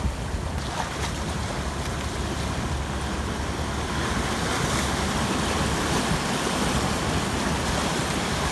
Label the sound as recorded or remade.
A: recorded